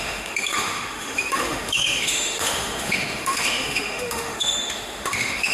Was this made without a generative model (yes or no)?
no